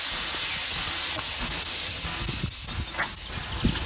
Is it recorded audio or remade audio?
recorded